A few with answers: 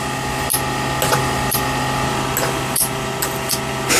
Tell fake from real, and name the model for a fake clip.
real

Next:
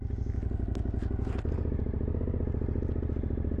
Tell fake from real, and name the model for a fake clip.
real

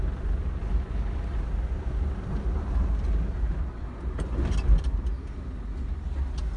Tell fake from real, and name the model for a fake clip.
real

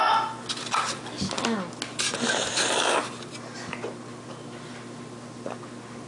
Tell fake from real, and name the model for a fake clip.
real